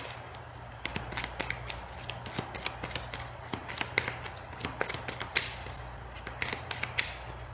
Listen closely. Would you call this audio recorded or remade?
recorded